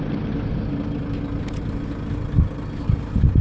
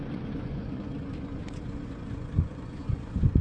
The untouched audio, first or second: first